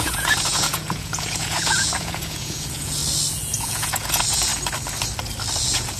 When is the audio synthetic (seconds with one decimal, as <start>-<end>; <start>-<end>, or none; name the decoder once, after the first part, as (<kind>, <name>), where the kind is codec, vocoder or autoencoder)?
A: 0.0-3.0 (vocoder, Vocos); 3.6-4.5; 5.6-6.0